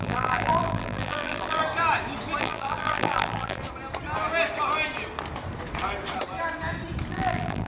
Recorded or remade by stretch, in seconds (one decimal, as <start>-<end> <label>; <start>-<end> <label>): 0.0-1.6 remade; 1.6-2.4 recorded; 2.4-3.6 remade; 3.6-7.1 recorded; 7.1-7.7 remade

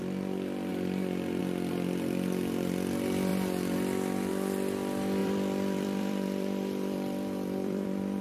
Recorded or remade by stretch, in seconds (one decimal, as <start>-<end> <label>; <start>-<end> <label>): 0.0-5.2 recorded; 5.2-8.2 remade